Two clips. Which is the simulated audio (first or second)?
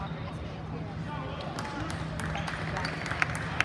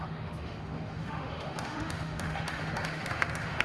second